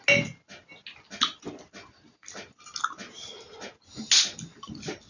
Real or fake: real